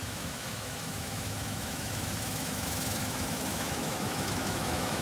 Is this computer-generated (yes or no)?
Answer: yes